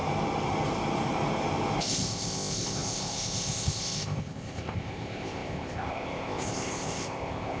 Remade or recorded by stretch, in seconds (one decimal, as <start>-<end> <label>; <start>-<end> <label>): 0.0-1.8 recorded; 1.8-7.6 remade